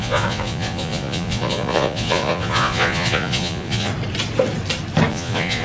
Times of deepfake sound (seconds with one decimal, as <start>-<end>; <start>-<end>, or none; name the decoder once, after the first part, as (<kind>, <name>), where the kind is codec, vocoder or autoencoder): 0.0-3.9 (vocoder, Vocos); 5.1-5.6